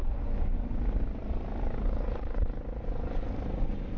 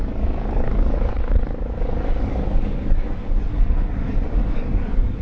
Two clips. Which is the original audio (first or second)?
first